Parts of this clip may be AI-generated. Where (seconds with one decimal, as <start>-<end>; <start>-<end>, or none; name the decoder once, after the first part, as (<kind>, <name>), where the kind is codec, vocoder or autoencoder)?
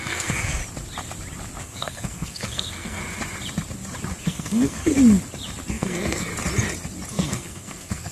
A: 0.0-0.6 (codec, SNAC); 1.6-3.0; 4.2-4.9; 5.7-6.3; 7.1-8.1